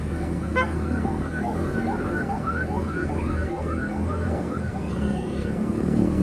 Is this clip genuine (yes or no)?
no